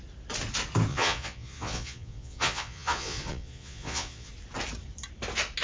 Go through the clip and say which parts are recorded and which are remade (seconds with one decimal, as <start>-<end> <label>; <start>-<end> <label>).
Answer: 0.0-0.9 recorded; 0.9-4.3 remade; 4.3-5.6 recorded